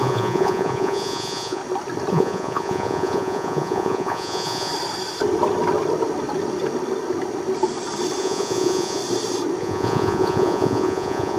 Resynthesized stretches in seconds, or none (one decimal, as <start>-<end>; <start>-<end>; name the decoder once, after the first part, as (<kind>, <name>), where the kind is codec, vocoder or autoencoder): 0.0-1.6 (vocoder, Vocos); 2.1-4.7; 8.2-9.0; 9.6-11.4